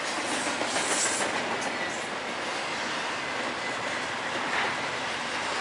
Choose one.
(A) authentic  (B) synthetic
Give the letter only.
A